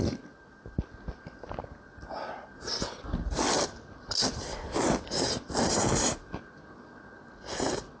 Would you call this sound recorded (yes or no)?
yes